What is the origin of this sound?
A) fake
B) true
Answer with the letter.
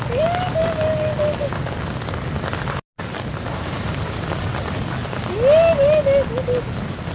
B